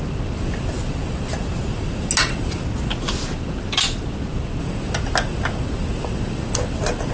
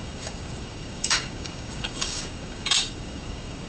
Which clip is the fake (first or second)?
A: second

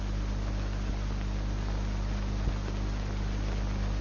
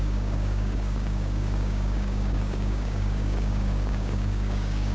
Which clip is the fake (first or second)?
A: second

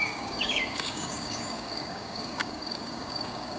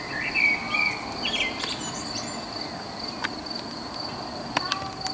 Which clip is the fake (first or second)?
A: first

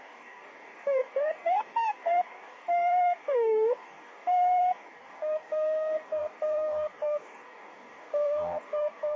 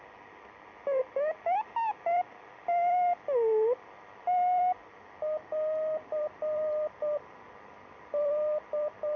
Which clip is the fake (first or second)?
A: first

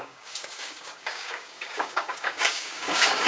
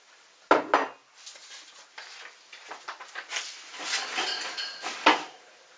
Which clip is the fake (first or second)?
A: first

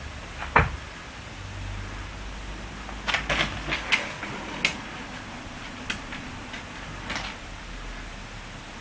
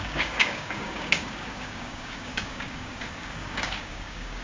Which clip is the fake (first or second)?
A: second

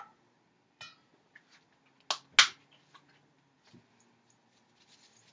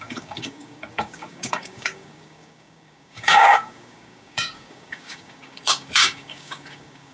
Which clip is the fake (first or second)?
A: second